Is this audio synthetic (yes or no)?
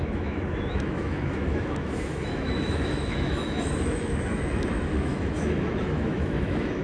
yes